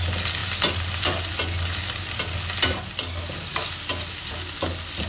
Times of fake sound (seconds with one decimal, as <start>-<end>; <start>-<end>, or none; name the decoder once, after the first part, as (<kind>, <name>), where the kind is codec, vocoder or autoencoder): none